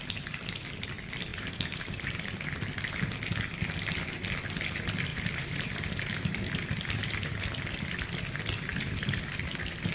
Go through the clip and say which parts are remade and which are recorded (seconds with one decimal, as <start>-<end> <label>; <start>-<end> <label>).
0.0-1.3 recorded; 1.3-2.2 remade; 2.2-5.1 recorded; 5.1-6.5 remade; 6.5-9.9 recorded